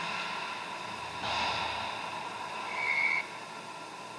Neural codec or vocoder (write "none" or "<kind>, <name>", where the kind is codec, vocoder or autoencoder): none